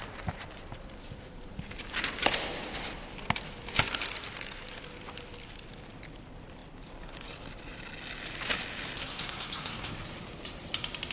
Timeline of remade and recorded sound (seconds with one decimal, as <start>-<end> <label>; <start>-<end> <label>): 0.0-9.0 recorded; 9.0-9.9 remade; 9.9-11.1 recorded